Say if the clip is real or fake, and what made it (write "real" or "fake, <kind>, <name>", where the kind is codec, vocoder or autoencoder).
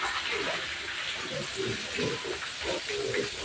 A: real